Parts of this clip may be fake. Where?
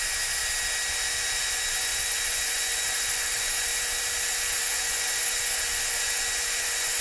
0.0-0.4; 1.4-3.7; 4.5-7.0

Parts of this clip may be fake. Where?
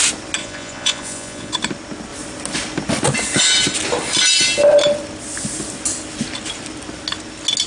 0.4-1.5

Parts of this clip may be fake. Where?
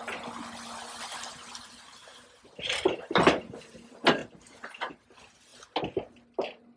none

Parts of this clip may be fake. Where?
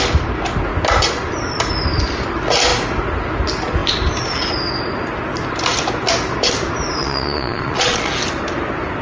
7.0-8.1